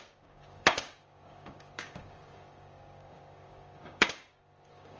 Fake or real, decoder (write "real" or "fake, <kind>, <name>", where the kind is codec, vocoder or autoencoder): fake, codec, DAC